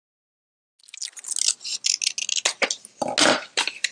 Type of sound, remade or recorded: recorded